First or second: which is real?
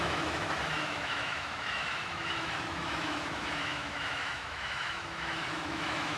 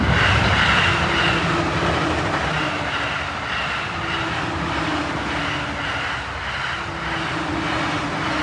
second